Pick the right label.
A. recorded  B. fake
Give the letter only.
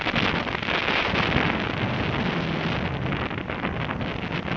A